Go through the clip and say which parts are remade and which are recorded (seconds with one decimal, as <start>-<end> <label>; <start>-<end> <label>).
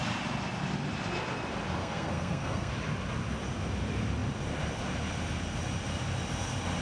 0.0-1.8 recorded; 1.8-2.7 remade; 2.7-6.8 recorded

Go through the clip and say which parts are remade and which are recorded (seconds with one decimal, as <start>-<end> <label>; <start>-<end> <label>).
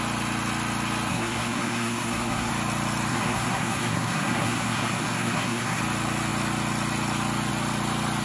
0.0-1.1 recorded; 1.1-2.5 remade; 2.5-3.1 recorded; 3.1-5.8 remade; 5.8-8.2 recorded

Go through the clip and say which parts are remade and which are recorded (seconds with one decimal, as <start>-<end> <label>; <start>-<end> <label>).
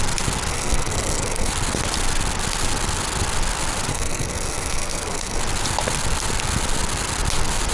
0.0-0.5 recorded; 0.5-1.5 remade; 1.5-3.9 recorded; 3.9-5.4 remade; 5.4-7.7 recorded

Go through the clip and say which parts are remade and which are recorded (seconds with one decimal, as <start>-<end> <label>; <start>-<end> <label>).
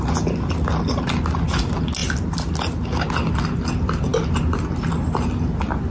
0.0-5.9 recorded